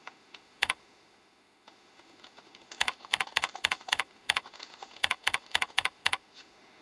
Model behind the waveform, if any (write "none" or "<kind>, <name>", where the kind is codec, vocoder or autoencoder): autoencoder, DAC-VAE